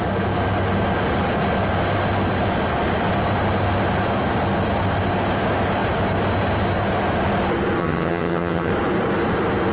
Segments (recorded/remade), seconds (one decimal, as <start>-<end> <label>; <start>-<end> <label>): 0.0-7.8 recorded; 7.8-8.7 remade; 8.7-9.7 recorded